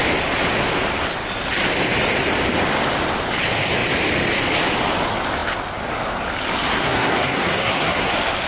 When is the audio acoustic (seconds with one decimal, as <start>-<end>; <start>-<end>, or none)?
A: 0.0-6.7; 8.1-8.5